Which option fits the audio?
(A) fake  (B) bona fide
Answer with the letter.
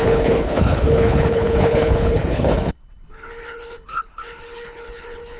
A